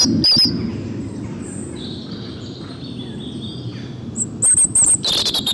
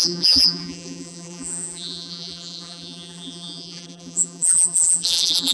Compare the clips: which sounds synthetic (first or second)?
second